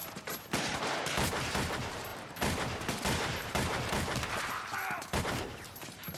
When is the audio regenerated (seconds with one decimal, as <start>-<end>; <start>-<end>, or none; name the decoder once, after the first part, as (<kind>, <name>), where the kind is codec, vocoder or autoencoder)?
0.0-6.2 (vocoder, BigVGAN v2)